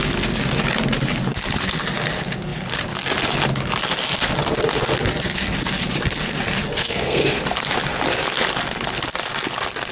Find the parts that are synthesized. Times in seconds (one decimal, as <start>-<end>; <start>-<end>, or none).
6.8-7.4